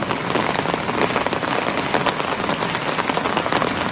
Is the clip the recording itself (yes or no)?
yes